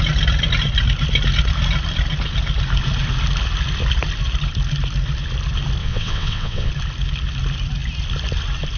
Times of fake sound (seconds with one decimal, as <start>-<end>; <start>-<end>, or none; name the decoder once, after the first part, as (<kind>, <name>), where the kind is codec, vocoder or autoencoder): 5.8-6.7 (vocoder, WaveNeXt)